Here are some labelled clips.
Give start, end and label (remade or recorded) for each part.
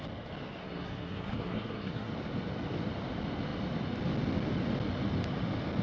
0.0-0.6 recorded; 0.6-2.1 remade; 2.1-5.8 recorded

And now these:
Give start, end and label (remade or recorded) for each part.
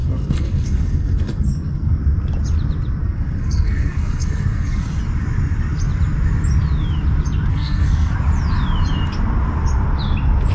0.0-2.0 remade; 2.0-3.0 recorded; 3.0-5.0 remade; 5.0-7.5 recorded; 7.5-8.1 remade; 8.1-10.5 recorded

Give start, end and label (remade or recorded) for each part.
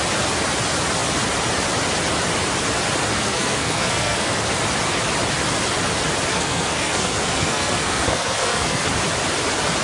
0.0-3.1 recorded; 3.1-4.4 remade; 4.4-6.3 recorded; 6.3-8.8 remade; 8.8-9.8 recorded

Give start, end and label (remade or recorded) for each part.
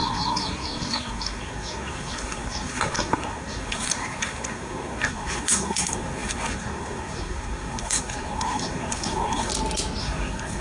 0.0-9.5 remade; 9.5-10.0 recorded; 10.0-10.6 remade